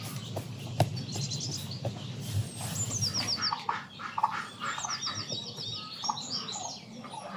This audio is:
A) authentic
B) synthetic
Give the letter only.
A